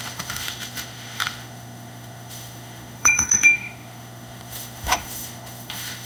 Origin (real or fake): fake